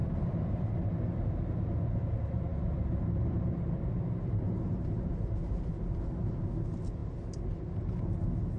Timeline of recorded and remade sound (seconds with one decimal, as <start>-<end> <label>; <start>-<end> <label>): 0.0-0.7 remade; 0.7-2.5 recorded; 2.5-5.7 remade; 5.7-8.6 recorded